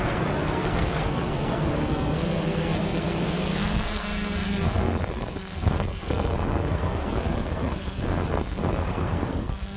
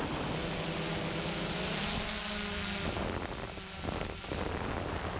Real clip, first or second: second